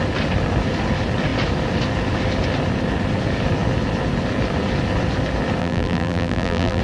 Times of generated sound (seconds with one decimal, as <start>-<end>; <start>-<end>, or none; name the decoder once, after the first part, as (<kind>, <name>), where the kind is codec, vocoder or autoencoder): 5.6-6.8 (vocoder, BigVGAN v2)